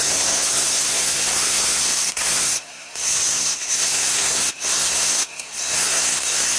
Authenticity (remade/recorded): remade